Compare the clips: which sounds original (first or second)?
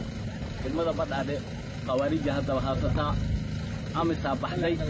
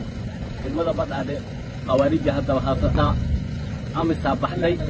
first